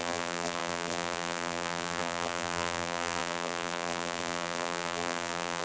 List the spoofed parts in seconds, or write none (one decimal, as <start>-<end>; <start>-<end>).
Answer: 0.0-5.6